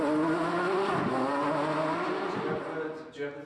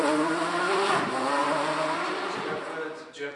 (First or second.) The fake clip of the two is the second